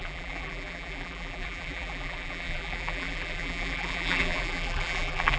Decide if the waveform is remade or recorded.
remade